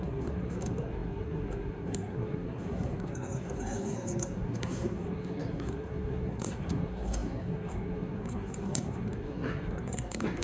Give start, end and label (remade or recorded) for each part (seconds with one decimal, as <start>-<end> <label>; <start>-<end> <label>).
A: 0.0-10.4 remade